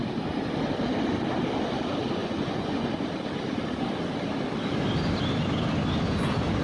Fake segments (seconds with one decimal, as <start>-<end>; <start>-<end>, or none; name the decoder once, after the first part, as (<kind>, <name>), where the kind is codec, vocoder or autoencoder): 2.2-2.9 (vocoder, Vocos)